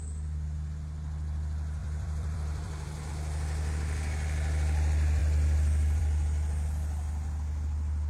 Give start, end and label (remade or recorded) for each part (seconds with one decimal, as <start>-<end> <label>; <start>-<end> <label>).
0.0-1.8 recorded; 1.8-3.1 remade; 3.1-8.1 recorded